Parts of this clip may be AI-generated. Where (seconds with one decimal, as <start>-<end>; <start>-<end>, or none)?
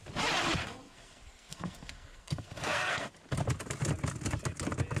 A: 0.6-3.1